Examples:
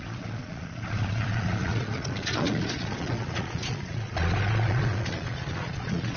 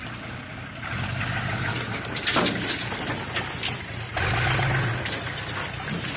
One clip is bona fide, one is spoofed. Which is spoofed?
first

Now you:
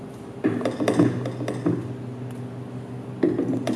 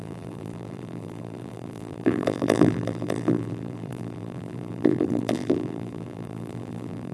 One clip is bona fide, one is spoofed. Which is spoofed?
second